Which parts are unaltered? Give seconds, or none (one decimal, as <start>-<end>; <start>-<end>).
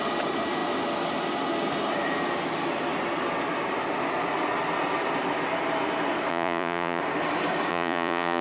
0.0-6.3; 7.0-7.7